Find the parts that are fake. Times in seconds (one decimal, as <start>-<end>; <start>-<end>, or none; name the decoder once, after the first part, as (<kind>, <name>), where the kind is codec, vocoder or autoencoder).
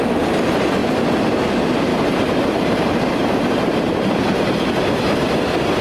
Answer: 1.9-4.6 (vocoder, BigVGAN v2)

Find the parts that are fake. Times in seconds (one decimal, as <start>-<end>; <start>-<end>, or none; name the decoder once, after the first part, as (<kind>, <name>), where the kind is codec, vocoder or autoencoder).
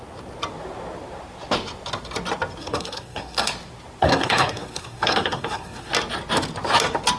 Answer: 2.6-3.5 (codec, SNAC); 4.0-5.9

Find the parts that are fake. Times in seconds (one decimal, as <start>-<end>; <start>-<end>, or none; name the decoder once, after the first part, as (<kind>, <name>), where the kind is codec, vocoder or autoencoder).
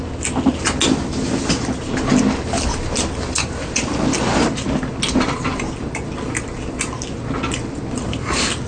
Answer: none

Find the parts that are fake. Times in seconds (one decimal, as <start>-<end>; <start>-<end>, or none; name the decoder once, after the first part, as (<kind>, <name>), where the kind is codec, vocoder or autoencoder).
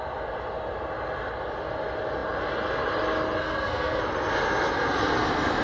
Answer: 3.4-4.0 (codec, SNAC)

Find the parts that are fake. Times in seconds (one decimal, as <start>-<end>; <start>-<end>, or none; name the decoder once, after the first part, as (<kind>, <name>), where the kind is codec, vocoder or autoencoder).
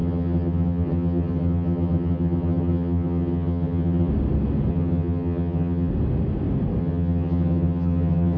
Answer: 0.0-4.1 (vocoder, HiFi-GAN); 4.7-5.9; 6.8-8.4